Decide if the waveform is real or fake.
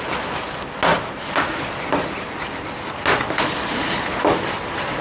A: real